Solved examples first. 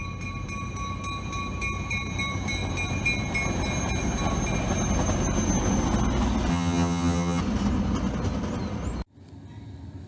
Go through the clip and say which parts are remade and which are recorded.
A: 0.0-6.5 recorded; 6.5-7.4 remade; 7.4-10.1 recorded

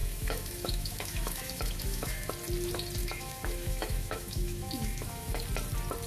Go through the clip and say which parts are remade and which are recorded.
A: 0.0-2.3 remade; 2.3-3.0 recorded; 3.0-5.4 remade; 5.4-6.1 recorded

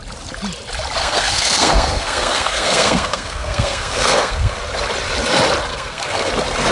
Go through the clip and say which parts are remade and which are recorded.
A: 0.0-1.0 recorded; 1.0-4.6 remade; 4.6-5.7 recorded; 5.7-6.3 remade; 6.3-6.7 recorded

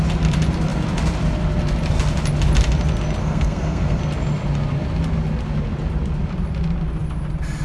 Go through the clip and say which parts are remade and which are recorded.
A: 0.0-3.2 recorded; 3.2-4.0 remade; 4.0-7.6 recorded

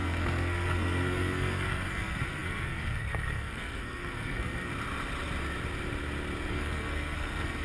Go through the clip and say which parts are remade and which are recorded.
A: 0.0-4.7 remade; 4.7-6.5 recorded; 6.5-7.6 remade

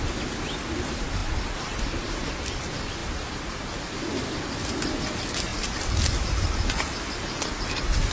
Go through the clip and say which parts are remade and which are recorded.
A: 0.0-1.2 recorded; 1.2-2.2 remade; 2.2-5.5 recorded; 5.5-7.6 remade; 7.6-8.1 recorded

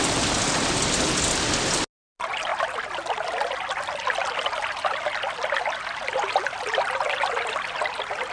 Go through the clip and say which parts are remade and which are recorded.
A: 0.0-8.3 recorded

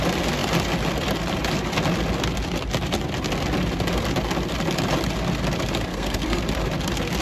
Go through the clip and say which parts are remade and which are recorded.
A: 0.0-5.9 recorded; 5.9-6.4 remade; 6.4-7.2 recorded